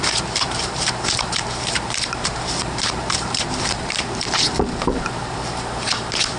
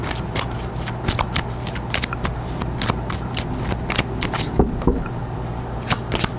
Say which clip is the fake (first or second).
first